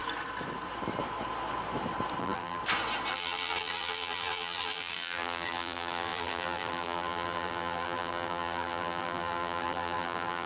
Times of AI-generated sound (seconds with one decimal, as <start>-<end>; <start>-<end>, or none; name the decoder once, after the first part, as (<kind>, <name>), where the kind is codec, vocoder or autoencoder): 2.2-2.6 (vocoder, BigVGAN v2); 3.1-10.5